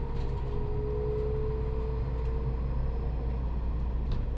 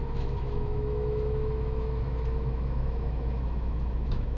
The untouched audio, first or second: first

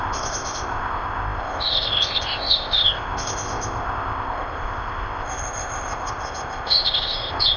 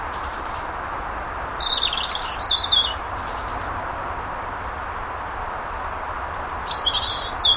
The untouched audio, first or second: second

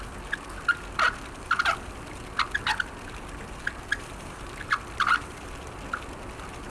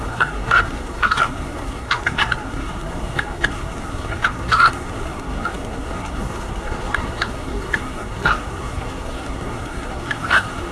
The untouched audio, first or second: first